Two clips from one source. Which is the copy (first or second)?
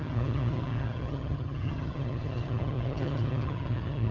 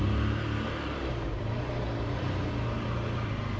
first